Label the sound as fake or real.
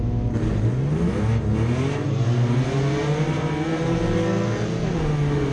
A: real